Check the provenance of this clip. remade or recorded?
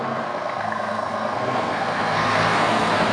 remade